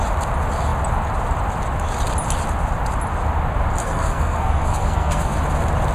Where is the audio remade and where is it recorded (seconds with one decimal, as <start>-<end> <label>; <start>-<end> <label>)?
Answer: 0.0-3.8 recorded; 3.8-5.4 remade; 5.4-5.9 recorded